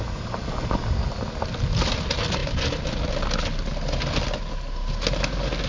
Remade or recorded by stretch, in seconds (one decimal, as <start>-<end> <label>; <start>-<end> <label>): 0.0-5.7 recorded